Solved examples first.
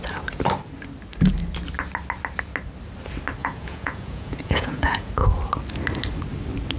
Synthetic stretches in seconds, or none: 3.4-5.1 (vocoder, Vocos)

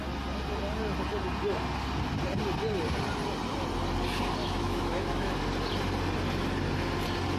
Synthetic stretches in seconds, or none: 4.4-5.4 (autoencoder, DAC-VAE)

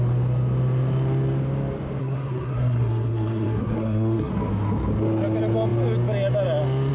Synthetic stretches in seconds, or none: 2.0-4.3 (codec, SNAC)